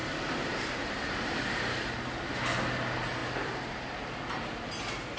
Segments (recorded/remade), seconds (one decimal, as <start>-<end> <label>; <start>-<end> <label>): 0.0-1.9 remade; 1.9-5.2 recorded